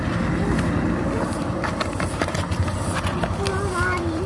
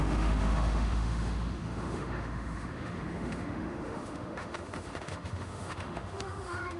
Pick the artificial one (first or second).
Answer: second